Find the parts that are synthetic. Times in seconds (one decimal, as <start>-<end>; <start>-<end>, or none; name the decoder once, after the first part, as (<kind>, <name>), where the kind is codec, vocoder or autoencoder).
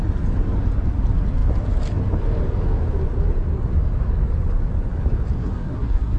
5.4-6.2 (codec, SNAC)